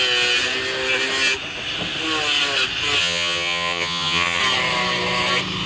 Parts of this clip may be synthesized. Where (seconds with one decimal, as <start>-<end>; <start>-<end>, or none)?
3.0-4.4

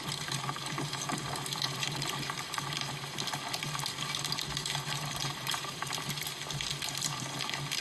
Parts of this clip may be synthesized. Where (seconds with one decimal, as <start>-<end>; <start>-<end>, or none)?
5.2-5.9

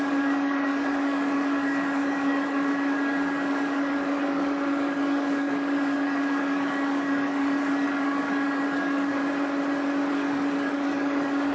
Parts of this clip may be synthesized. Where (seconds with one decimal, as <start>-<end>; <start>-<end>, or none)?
0.0-9.2; 10.1-11.5

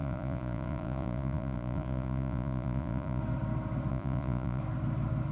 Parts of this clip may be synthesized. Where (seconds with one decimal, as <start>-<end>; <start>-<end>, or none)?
0.0-3.2; 3.9-4.6

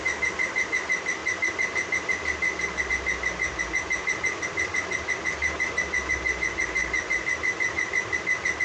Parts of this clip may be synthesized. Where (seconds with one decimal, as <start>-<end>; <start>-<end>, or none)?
1.2-2.9; 5.4-6.1

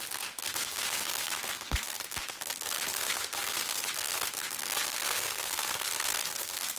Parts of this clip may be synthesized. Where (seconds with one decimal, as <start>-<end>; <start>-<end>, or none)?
0.0-6.8